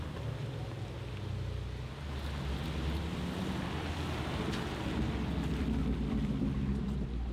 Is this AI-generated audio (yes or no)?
no